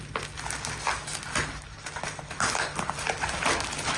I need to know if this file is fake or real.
real